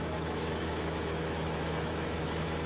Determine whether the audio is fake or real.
fake